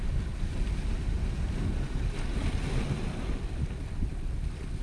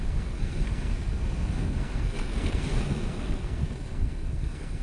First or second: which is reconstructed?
second